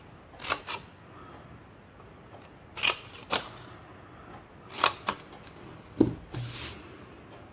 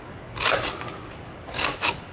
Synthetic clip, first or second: second